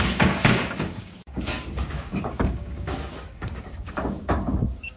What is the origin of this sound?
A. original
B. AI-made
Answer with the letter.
B